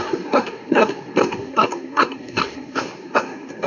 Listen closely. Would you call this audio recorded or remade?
remade